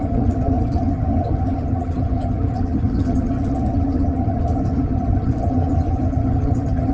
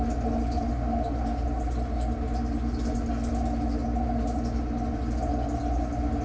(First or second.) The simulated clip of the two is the first